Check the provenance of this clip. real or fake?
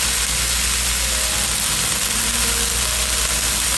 real